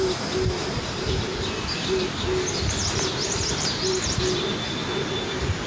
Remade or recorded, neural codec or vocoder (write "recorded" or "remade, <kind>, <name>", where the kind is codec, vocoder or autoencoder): recorded